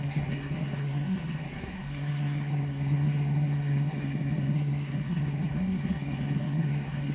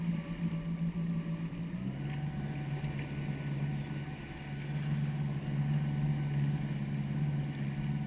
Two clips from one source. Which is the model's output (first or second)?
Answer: first